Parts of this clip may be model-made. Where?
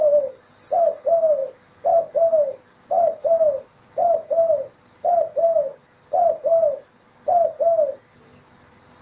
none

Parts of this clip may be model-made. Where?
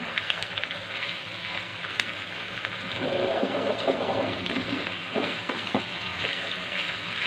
0.0-7.3 (codec, SNAC)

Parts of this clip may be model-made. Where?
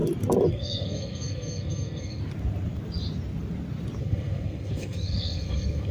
0.5-2.2 (codec, SNAC); 4.0-5.9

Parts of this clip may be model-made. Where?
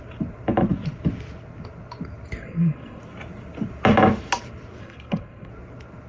2.4-3.0 (codec, SNAC); 4.8-5.5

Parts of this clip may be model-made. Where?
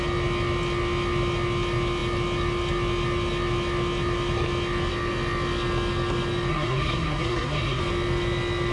6.5-7.8 (codec, SNAC)